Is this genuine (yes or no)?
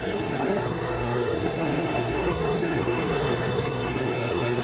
no